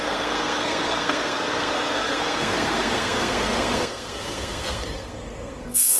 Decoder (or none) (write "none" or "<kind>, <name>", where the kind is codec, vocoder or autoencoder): codec, SNAC